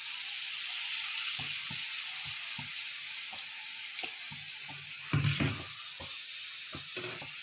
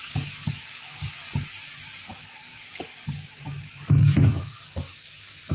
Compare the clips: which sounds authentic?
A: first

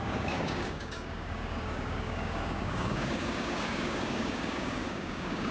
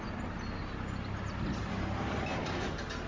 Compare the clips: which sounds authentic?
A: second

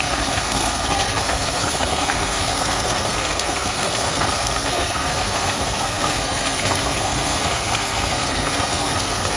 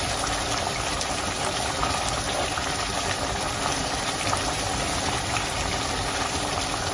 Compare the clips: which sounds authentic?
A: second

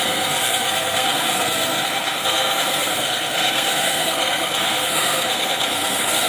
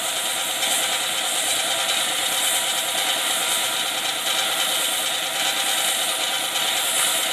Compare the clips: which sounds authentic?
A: second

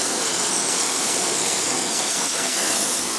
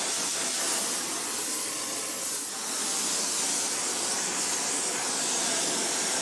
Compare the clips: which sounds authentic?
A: second